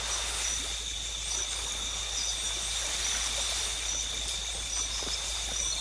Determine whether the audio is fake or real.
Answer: real